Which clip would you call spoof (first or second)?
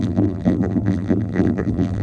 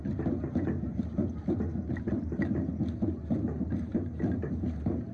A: first